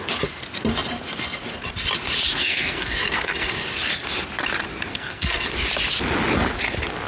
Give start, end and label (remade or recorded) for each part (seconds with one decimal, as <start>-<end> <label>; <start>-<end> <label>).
0.0-2.4 recorded; 2.4-3.5 remade; 3.5-4.9 recorded; 4.9-5.5 remade; 5.5-7.1 recorded